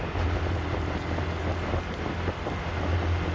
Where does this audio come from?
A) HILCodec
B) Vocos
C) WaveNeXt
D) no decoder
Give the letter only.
D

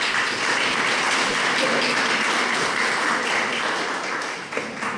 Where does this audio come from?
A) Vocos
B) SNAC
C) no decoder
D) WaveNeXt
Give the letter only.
C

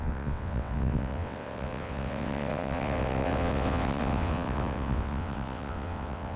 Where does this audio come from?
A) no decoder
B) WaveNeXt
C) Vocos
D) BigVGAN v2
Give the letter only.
B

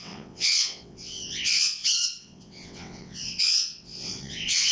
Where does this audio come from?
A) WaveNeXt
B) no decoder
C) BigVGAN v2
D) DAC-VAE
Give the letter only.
A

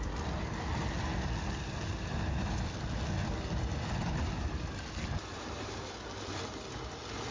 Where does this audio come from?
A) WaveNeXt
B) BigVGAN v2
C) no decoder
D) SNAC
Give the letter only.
C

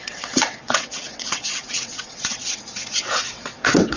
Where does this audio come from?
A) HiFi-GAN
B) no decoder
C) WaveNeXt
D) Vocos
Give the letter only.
C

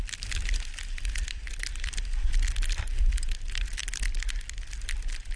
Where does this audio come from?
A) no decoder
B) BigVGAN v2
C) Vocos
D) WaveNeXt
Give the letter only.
A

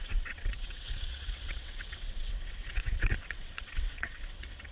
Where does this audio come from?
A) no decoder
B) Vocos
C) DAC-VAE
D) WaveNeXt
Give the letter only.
D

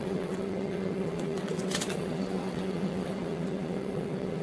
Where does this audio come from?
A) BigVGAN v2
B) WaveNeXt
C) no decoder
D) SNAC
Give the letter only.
B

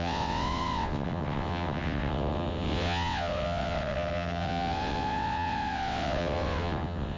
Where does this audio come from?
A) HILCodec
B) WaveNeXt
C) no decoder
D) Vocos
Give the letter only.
B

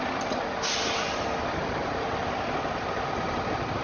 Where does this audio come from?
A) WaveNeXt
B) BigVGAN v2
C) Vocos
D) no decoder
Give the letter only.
D